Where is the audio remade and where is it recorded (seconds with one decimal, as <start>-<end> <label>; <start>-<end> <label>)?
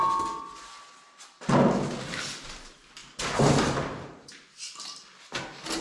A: 0.0-5.8 recorded